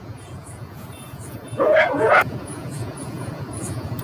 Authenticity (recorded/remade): remade